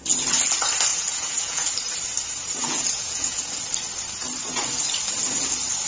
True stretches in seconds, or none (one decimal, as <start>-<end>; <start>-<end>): 0.0-0.9; 1.7-2.6; 3.4-5.9